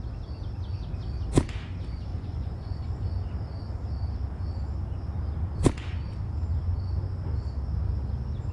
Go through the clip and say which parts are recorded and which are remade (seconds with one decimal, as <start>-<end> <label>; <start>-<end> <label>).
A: 0.0-2.1 recorded; 2.1-3.1 remade; 3.1-8.5 recorded